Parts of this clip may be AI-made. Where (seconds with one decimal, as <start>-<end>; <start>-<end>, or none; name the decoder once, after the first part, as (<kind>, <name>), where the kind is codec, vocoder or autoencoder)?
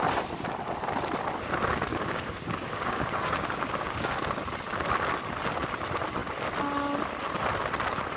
1.9-4.2 (codec, DAC)